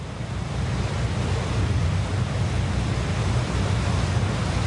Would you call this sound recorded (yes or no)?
yes